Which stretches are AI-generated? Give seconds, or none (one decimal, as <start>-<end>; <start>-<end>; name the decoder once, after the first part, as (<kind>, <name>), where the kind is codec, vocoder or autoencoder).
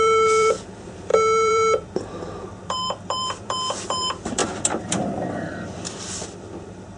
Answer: 0.0-4.4 (vocoder, BigVGAN v2); 6.1-7.0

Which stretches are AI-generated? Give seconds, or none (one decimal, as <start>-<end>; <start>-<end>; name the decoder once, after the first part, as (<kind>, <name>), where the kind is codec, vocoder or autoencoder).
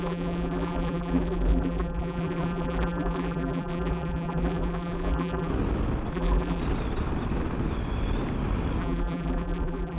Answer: 0.0-5.5 (vocoder, BigVGAN v2); 6.1-6.6; 8.8-10.0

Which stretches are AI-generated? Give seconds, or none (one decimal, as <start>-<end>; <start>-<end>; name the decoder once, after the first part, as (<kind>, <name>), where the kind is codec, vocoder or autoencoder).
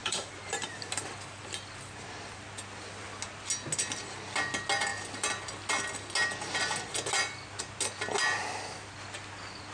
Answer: 0.0-0.8 (vocoder, BigVGAN v2)